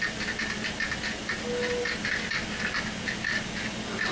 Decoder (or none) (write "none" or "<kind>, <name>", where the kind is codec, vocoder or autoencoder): none